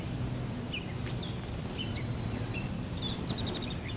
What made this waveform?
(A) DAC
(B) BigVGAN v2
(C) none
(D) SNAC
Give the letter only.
B